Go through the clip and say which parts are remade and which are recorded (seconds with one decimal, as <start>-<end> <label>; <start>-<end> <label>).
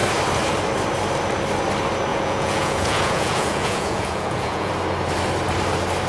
0.0-2.1 recorded; 2.1-4.7 remade; 4.7-6.1 recorded